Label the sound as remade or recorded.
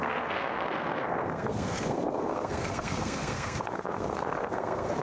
remade